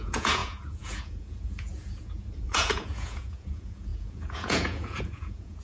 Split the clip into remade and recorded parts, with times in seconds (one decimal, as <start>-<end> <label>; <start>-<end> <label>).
0.0-5.6 remade